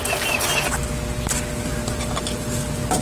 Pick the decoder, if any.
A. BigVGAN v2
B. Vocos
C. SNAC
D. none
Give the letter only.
D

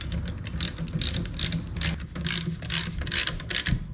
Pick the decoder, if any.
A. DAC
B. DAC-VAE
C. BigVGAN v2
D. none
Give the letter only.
D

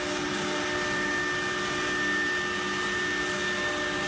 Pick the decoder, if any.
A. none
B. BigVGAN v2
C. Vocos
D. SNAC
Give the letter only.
A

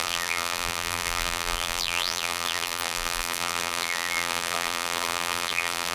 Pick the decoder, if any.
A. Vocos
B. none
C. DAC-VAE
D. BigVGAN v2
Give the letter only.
D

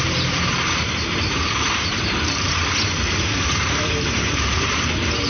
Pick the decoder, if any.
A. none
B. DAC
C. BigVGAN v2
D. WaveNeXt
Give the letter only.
C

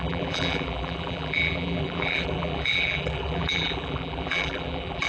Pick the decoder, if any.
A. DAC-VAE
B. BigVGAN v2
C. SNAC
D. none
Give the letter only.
B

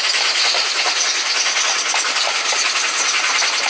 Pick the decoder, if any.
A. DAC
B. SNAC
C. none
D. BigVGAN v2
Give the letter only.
C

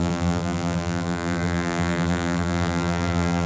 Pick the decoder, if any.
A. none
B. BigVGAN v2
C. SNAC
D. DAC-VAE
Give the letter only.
B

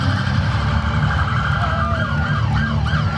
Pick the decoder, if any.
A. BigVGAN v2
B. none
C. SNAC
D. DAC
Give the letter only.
A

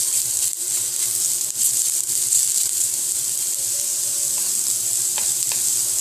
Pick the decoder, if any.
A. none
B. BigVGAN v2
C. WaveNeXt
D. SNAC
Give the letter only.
A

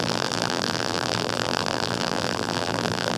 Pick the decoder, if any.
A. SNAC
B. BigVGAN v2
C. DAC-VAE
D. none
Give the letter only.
B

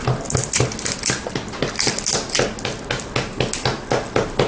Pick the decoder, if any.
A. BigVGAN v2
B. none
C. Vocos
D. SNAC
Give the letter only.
B